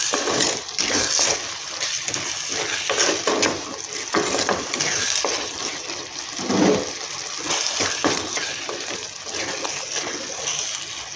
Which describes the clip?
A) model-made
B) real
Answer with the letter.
B